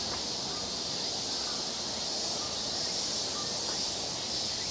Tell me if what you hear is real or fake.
real